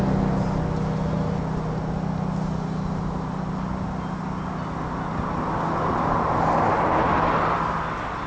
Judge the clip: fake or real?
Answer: real